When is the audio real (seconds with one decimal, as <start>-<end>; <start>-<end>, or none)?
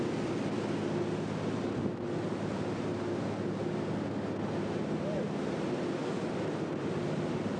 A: 0.0-7.6